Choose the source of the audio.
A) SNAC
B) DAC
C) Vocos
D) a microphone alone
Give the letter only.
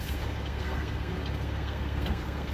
A